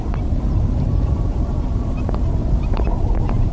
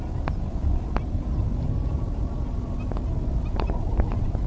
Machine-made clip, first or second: first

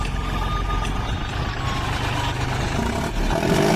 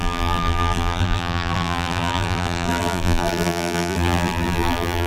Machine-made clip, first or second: second